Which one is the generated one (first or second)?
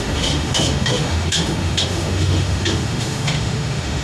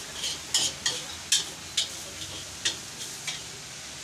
first